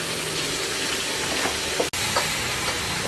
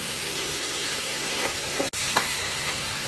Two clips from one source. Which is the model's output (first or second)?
second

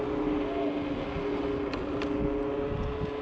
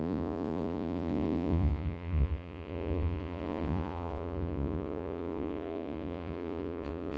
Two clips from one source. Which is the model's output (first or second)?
second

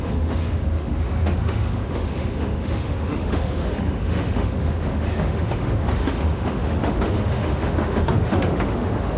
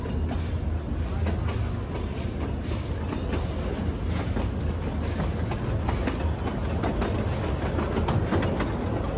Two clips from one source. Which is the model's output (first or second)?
first